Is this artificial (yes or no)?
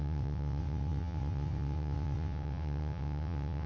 yes